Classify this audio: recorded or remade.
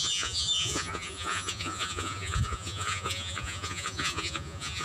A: remade